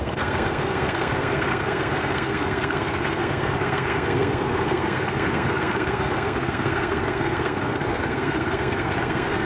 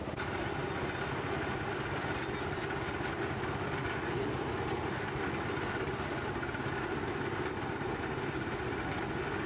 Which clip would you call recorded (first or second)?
second